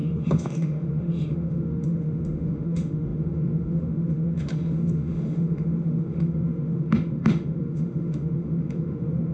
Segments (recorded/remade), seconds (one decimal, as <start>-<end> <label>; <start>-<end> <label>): 0.0-9.3 remade